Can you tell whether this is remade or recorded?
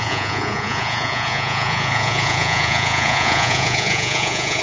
remade